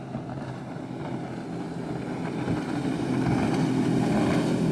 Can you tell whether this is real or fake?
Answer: real